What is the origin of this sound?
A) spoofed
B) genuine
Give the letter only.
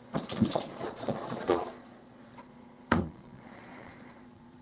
A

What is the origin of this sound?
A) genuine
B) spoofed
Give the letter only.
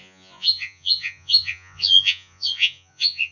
B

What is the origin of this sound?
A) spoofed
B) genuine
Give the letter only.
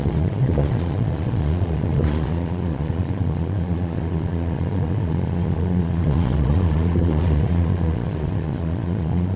A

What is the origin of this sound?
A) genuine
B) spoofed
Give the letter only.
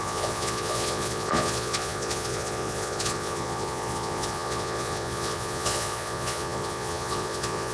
B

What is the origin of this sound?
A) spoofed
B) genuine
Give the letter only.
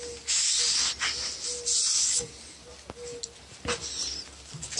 B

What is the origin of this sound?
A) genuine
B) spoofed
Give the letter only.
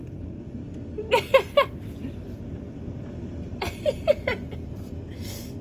A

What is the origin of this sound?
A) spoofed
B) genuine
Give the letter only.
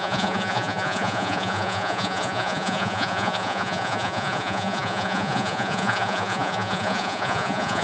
A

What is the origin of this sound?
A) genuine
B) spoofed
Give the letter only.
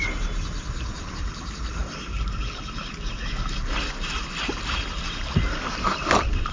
A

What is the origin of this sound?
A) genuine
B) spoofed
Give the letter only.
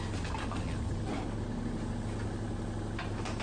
A